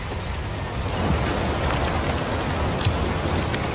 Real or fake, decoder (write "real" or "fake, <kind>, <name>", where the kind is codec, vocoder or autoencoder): real